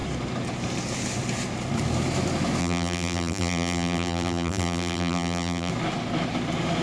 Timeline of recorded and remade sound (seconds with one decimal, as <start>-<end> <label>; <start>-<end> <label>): 0.0-2.6 recorded; 2.6-5.7 remade; 5.7-6.8 recorded